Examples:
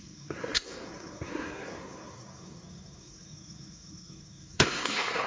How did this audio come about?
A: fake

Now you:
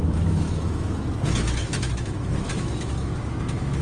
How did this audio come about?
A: fake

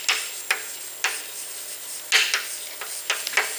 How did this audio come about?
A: real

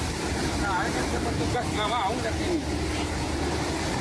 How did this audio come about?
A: real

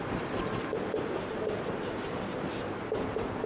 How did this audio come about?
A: real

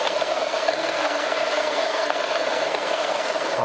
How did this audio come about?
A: fake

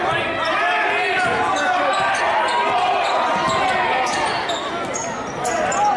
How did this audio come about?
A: real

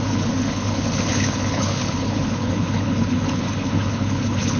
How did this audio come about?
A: fake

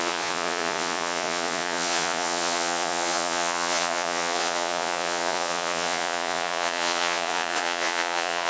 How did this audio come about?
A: fake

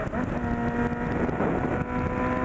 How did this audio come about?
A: real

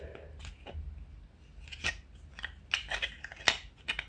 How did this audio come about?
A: real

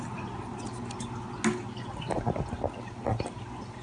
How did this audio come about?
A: real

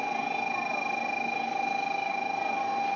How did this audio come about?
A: real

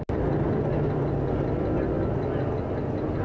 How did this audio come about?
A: real